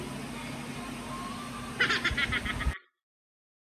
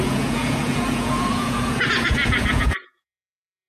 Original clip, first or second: first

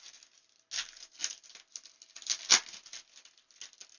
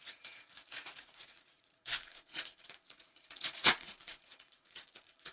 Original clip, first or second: first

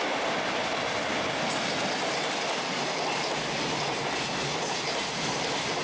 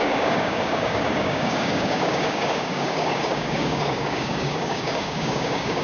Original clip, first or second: first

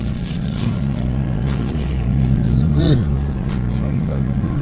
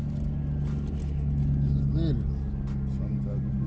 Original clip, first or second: second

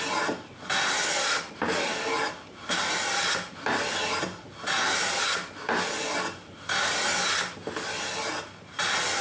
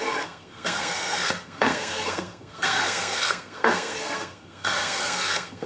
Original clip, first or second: first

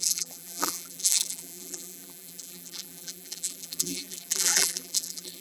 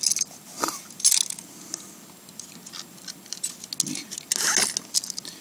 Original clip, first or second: second